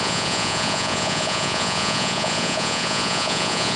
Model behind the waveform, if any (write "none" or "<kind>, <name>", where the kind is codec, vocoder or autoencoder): vocoder, Vocos